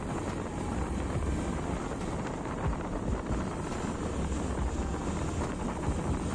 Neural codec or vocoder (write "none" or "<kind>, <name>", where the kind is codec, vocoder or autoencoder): vocoder, BigVGAN v2